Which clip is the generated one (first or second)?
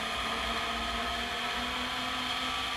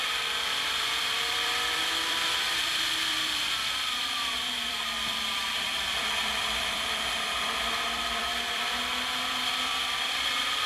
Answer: second